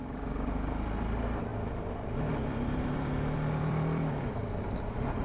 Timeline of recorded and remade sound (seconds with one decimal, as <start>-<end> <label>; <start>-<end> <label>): 0.0-1.5 recorded; 1.5-4.6 remade; 4.6-5.2 recorded